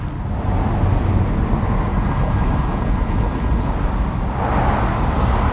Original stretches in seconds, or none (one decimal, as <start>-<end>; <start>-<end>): 0.0-1.9; 3.7-5.5